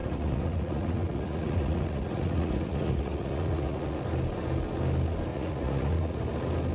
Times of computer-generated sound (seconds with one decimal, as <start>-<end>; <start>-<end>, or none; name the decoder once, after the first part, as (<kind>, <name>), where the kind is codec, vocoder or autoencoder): 0.0-4.0 (vocoder, Vocos); 5.3-6.2